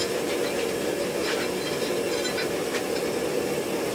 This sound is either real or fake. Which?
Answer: real